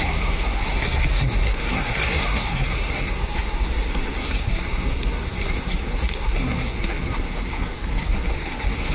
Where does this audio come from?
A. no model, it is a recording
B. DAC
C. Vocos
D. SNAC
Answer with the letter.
D